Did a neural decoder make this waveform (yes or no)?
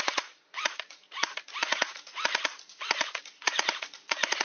yes